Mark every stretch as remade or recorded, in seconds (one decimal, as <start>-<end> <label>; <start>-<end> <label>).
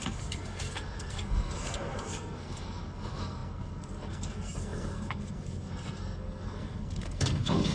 0.0-7.7 remade